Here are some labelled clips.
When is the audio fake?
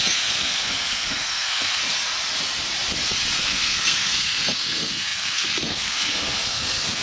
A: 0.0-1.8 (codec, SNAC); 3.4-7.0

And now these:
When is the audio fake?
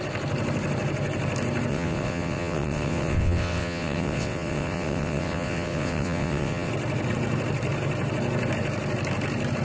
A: 1.7-6.7 (vocoder, WaveNeXt)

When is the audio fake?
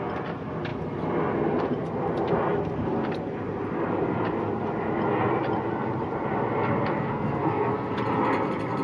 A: 6.9-7.9 (codec, SNAC)